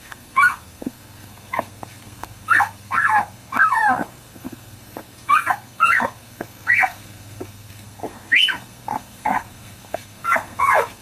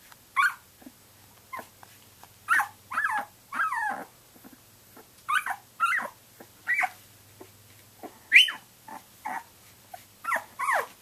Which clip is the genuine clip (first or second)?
second